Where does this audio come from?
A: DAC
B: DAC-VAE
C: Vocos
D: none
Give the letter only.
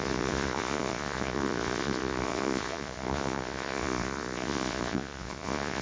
C